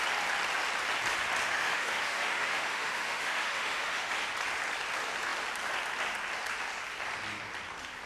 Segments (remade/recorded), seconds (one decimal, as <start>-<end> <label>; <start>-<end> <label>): 0.0-1.4 recorded; 1.4-4.1 remade; 4.1-8.1 recorded